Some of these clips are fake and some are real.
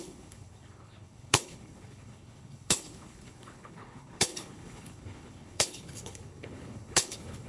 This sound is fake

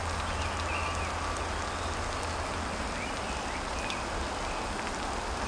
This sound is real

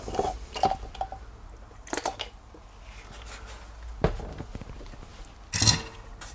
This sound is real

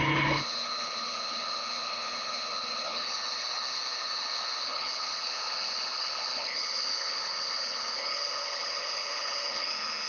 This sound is fake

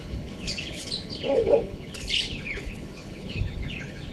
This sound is fake